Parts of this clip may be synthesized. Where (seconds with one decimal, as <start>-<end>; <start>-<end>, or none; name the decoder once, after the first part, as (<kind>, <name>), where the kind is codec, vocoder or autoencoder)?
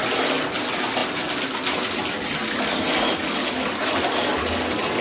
none